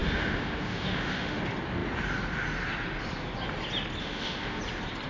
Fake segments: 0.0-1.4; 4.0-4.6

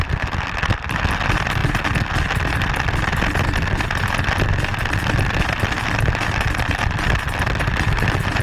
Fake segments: none